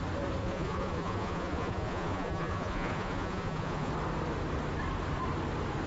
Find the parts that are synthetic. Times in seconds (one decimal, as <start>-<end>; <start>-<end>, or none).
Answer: 0.4-3.9